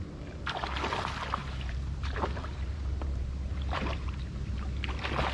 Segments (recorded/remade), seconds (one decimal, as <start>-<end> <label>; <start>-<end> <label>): 0.0-1.4 recorded; 1.4-4.1 remade; 4.1-5.3 recorded